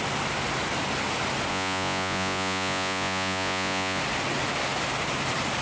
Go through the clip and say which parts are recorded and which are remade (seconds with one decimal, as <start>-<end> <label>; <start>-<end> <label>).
0.0-1.5 recorded; 1.5-4.0 remade; 4.0-5.6 recorded